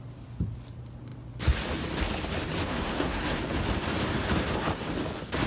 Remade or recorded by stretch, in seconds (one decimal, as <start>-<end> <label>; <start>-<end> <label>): 0.0-2.7 recorded; 2.7-3.4 remade; 3.4-5.5 recorded